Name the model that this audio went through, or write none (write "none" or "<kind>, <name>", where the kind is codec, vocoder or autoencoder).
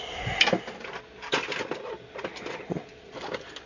none